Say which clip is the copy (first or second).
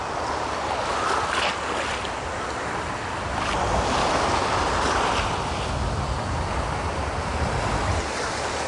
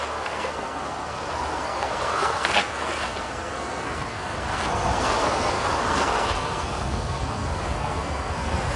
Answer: second